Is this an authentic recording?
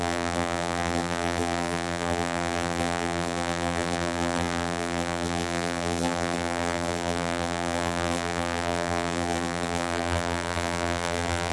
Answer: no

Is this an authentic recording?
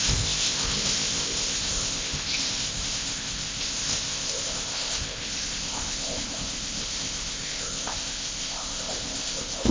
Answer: no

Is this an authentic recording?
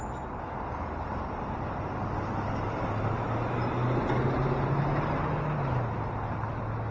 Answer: yes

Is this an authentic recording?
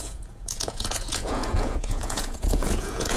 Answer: no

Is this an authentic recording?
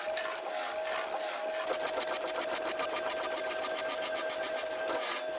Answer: yes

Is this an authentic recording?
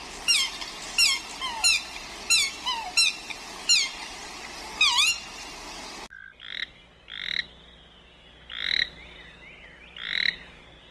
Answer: yes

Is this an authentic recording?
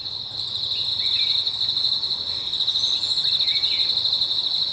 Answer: yes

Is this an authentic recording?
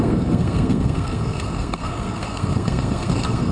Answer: no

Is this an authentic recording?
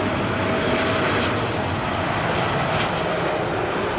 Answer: yes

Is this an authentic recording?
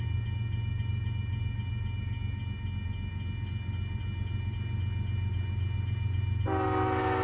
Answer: yes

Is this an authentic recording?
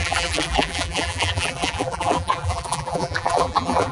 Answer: no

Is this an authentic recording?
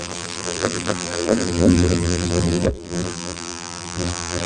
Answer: no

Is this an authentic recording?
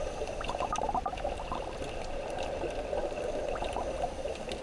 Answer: yes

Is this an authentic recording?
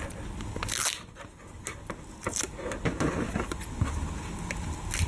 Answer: yes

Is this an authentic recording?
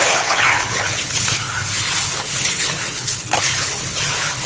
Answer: no